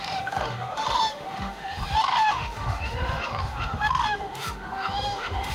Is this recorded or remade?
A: remade